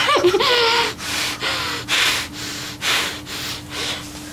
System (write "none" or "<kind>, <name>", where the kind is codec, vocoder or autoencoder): none